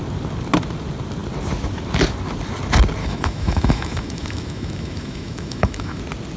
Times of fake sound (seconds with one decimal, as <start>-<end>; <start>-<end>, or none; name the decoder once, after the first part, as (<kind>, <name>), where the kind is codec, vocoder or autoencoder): 3.0-6.0 (autoencoder, DAC-VAE)